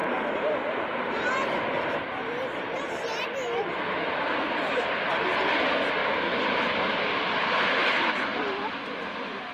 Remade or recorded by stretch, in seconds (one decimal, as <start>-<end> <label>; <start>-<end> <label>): 0.0-3.6 remade; 3.6-9.5 recorded